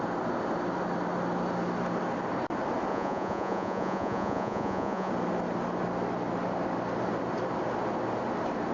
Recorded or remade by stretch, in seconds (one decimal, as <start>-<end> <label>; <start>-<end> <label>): 0.0-2.9 recorded; 2.9-5.1 remade; 5.1-8.7 recorded

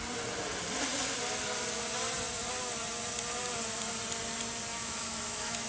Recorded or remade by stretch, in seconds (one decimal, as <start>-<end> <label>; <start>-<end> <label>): 0.0-4.7 recorded; 4.7-5.7 remade

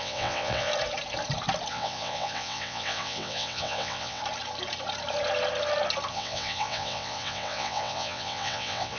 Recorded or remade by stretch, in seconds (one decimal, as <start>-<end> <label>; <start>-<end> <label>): 0.0-0.7 remade; 0.7-1.7 recorded; 1.7-4.2 remade; 4.2-6.1 recorded; 6.1-9.0 remade

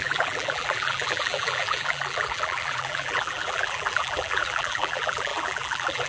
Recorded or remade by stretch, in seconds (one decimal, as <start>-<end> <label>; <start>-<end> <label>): 0.0-6.1 remade

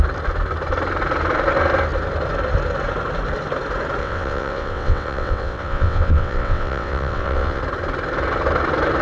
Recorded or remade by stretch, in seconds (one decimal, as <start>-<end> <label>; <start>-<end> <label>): 0.0-4.0 recorded; 4.0-7.6 remade; 7.6-9.0 recorded

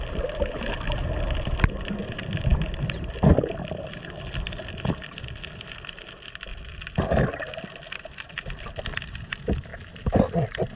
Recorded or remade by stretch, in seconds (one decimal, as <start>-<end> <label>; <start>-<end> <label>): 0.0-6.5 remade; 6.5-7.6 recorded; 7.6-9.7 remade; 9.7-10.8 recorded

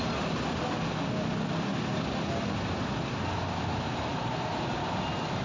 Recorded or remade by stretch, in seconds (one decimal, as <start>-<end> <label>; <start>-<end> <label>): 0.0-5.4 recorded

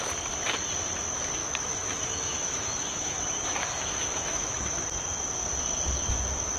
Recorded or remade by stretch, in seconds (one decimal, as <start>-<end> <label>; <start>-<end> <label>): 0.0-1.4 recorded; 1.4-4.8 remade; 4.8-6.6 recorded